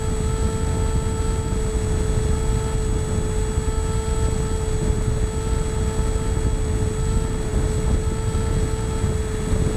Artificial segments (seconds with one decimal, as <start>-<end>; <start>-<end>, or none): none